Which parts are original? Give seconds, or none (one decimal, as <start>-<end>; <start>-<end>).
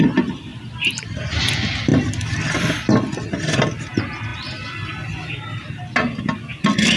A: 0.0-0.5; 1.4-1.9; 2.4-7.0